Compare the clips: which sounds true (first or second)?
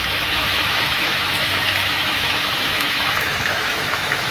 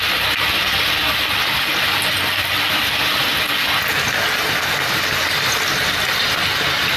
second